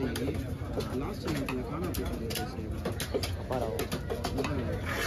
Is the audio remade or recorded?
recorded